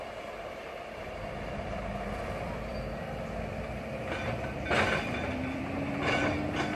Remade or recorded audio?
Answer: remade